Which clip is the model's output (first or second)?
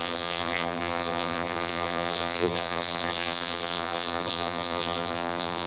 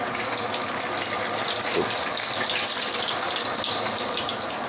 first